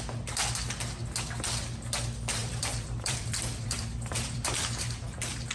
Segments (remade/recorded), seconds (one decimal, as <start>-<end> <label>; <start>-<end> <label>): 0.0-2.4 recorded; 2.4-4.6 remade; 4.6-5.5 recorded